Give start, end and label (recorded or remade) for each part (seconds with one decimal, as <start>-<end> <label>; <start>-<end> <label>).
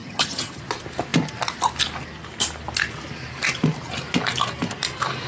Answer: 0.0-0.6 remade; 0.6-5.3 recorded